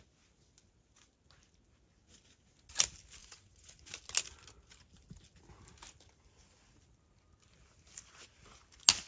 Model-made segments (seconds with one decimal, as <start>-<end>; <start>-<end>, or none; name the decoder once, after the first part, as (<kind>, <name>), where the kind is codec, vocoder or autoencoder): 3.2-3.8 (vocoder, Vocos)